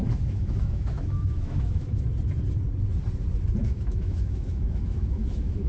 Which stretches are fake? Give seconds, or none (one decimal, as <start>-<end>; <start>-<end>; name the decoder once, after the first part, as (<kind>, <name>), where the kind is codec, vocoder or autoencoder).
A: 0.0-2.0 (autoencoder, DAC-VAE); 3.6-5.7